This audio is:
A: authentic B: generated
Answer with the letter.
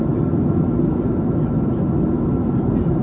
A